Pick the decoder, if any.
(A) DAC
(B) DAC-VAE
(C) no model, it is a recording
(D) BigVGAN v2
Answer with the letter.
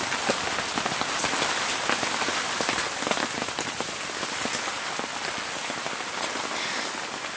C